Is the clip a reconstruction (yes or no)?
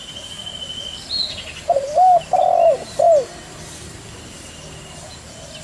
no